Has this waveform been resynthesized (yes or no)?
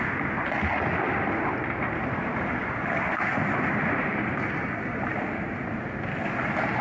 no